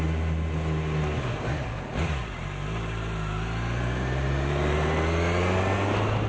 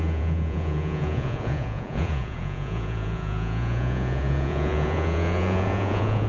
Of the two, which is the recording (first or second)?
first